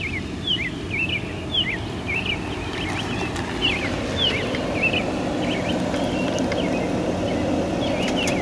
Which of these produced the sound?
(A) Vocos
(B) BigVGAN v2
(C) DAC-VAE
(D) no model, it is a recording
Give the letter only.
D